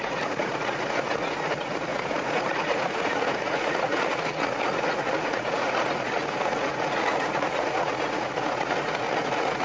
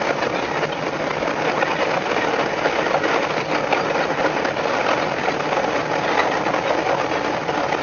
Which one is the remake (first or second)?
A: first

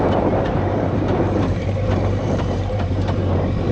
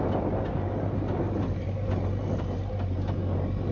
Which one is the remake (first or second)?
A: first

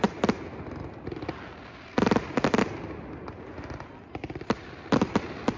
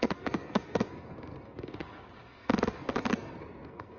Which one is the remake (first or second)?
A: second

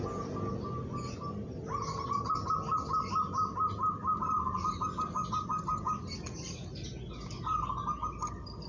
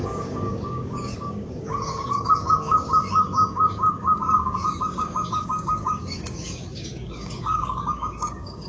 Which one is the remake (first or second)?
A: second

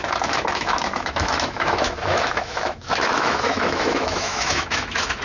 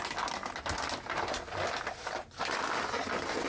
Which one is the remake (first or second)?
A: first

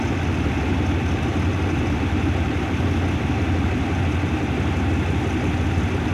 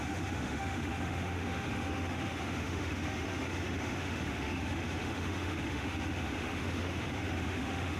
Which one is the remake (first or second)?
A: second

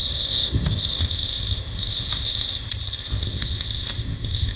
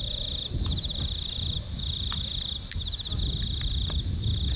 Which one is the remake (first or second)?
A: first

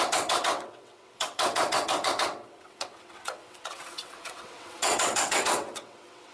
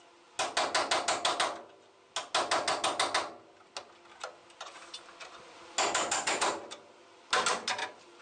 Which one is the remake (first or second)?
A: first